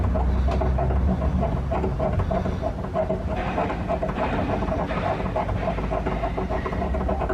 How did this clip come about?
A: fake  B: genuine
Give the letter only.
B